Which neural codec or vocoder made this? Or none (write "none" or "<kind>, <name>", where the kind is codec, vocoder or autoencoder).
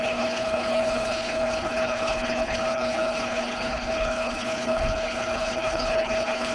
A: codec, HILCodec